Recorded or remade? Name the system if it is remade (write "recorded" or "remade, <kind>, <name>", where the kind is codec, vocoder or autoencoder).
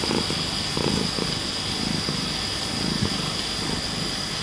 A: recorded